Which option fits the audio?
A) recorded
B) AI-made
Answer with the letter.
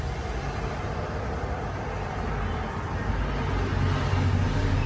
A